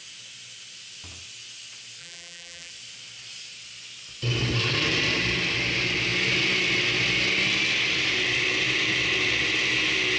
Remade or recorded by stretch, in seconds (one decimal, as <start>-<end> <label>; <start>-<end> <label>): 0.0-2.0 recorded; 2.0-2.7 remade; 2.7-10.2 recorded